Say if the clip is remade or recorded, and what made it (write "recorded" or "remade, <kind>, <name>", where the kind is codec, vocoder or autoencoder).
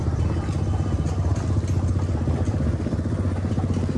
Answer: recorded